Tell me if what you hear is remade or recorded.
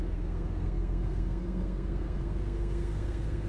remade